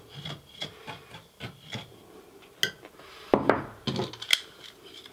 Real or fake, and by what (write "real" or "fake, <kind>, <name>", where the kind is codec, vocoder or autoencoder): real